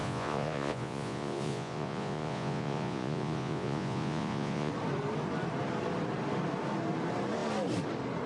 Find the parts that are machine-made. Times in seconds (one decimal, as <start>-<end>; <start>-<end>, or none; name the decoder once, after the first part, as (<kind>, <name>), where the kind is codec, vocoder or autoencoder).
0.0-4.7 (vocoder, Vocos)